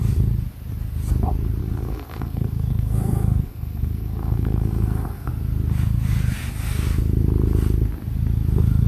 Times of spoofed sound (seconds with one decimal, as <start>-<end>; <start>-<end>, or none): 1.6-5.3